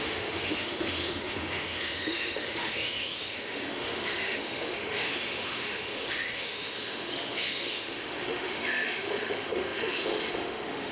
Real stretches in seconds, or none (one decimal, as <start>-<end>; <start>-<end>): none